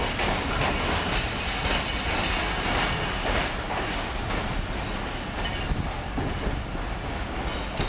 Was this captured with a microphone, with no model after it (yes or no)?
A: yes